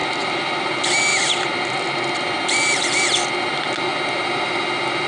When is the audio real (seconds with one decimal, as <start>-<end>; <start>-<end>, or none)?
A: 0.6-1.1; 2.2-5.1